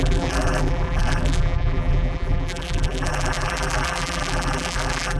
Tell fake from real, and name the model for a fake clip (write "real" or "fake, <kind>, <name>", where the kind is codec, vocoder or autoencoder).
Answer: fake, vocoder, BigVGAN v2